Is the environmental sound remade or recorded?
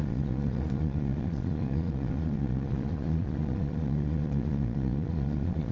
remade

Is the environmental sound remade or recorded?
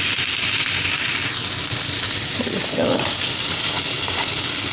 recorded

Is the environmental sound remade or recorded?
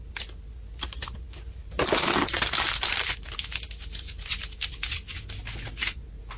recorded